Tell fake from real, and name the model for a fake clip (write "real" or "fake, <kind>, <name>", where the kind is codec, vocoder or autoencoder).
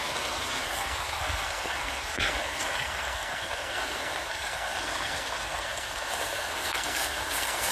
fake, codec, SNAC